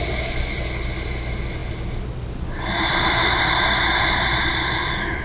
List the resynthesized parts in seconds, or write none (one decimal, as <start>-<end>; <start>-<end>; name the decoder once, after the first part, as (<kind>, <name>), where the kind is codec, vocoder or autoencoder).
none